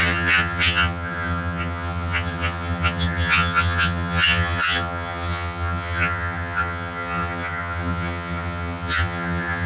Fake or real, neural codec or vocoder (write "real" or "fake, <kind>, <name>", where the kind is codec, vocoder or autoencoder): fake, vocoder, HiFi-GAN